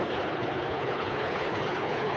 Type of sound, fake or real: fake